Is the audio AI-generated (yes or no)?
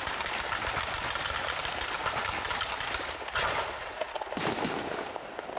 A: no